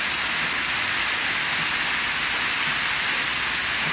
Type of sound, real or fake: real